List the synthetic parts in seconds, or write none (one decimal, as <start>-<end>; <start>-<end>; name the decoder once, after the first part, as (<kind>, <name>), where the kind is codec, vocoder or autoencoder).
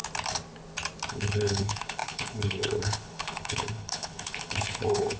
1.1-5.2 (codec, HILCodec)